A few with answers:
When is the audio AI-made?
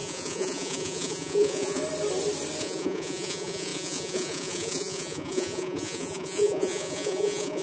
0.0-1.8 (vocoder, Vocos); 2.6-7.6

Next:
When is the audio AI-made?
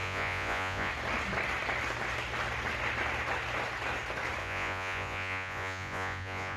0.0-0.9 (vocoder, Vocos); 4.4-6.6